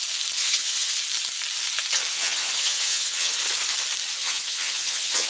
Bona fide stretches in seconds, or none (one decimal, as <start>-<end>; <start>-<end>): 0.0-0.4; 0.9-2.1; 3.3-4.1